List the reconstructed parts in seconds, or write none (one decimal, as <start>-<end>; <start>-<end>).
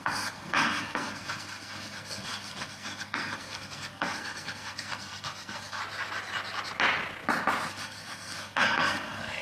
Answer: 0.0-5.8; 7.7-9.4